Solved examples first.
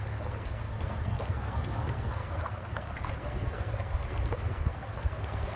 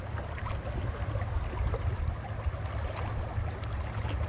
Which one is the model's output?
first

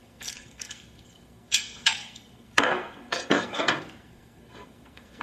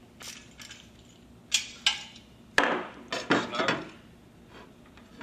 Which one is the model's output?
first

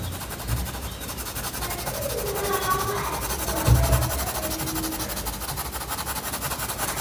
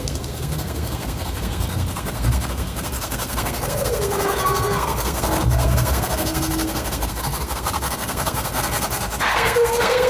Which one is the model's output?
second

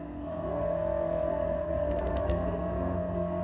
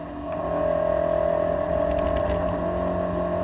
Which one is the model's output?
first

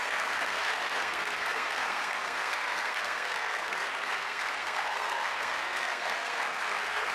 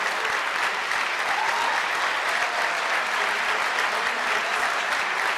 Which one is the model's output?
first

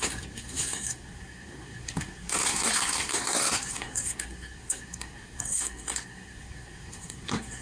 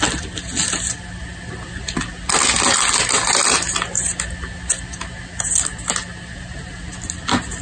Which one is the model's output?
first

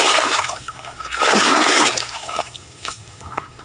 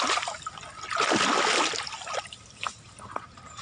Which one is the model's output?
first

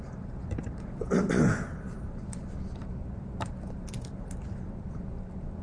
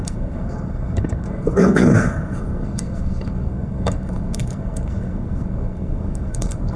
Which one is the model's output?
second